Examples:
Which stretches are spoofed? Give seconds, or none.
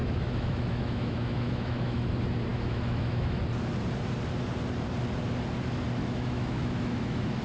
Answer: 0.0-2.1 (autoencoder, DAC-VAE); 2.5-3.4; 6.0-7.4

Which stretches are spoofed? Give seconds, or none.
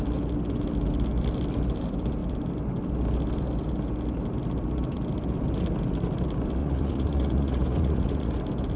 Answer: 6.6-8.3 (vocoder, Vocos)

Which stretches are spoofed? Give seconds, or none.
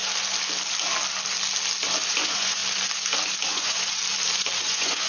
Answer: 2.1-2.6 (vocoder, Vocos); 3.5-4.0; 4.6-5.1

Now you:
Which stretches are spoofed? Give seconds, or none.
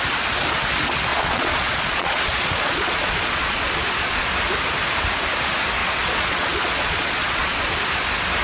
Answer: 1.1-4.3 (vocoder, Vocos); 5.8-7.7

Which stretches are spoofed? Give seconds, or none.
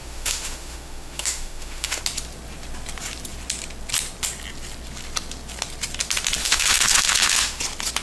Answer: 0.0-2.0 (autoencoder, DAC-VAE); 6.4-7.6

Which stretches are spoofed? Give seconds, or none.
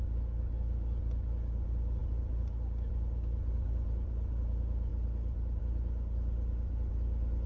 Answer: none